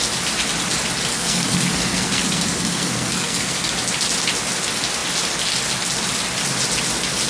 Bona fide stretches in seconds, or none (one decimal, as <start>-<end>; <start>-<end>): 0.0-1.1; 3.7-7.3